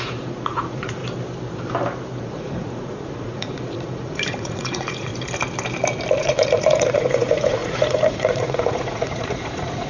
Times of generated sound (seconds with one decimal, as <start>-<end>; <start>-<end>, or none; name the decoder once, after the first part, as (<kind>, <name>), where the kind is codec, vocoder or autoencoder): 0.0-1.0 (vocoder, Vocos); 2.2-5.1; 6.2-9.9